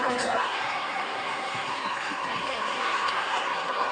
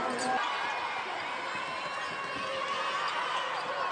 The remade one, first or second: first